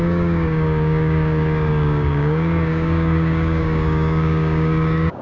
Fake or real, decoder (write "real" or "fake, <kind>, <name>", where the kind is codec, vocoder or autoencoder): fake, codec, DAC